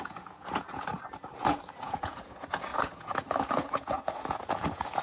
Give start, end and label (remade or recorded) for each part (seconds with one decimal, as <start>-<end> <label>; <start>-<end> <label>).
0.0-0.9 remade; 0.9-1.4 recorded; 1.4-5.0 remade